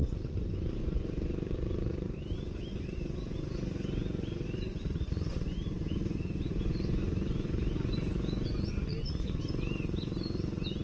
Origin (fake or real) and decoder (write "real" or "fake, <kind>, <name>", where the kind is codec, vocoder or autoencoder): fake, vocoder, Vocos